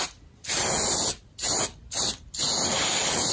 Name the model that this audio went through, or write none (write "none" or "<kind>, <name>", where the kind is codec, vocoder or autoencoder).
none